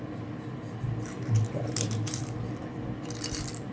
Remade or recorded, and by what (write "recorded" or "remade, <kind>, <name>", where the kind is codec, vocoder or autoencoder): recorded